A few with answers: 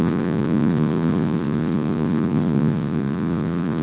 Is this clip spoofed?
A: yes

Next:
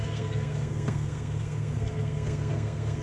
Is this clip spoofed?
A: yes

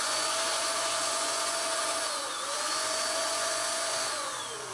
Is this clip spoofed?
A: yes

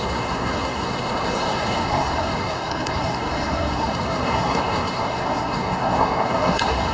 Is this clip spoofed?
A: yes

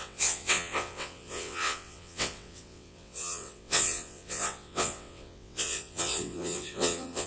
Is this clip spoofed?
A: yes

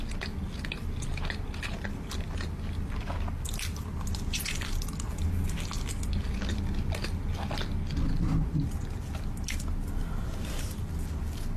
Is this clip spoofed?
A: no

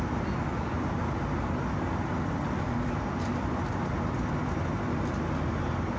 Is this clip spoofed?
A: no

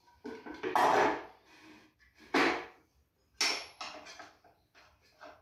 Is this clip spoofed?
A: no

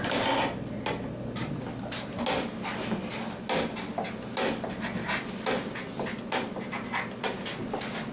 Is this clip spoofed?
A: no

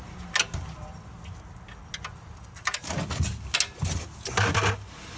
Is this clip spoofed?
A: no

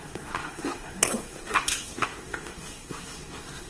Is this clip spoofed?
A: yes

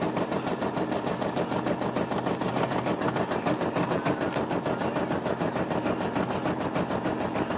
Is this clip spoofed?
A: no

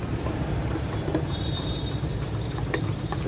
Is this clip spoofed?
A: yes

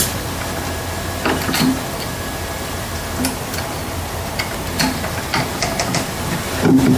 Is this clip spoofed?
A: no